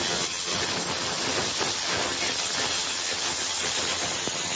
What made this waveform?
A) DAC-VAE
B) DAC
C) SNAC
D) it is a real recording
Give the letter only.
D